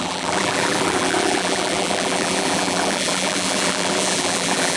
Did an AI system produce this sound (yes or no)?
yes